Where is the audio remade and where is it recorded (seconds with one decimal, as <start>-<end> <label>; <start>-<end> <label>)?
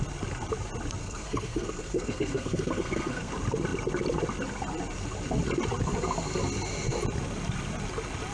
0.0-1.0 recorded; 1.0-3.3 remade; 3.3-8.3 recorded